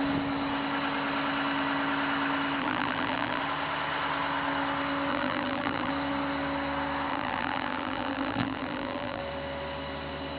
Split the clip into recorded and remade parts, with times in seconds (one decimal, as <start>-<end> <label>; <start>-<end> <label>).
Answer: 0.0-2.6 recorded; 2.6-3.4 remade; 3.4-5.1 recorded; 5.1-5.9 remade; 5.9-7.1 recorded; 7.1-9.2 remade; 9.2-10.4 recorded